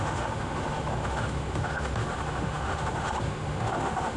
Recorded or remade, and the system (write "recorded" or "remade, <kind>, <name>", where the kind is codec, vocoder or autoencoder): remade, autoencoder, DAC-VAE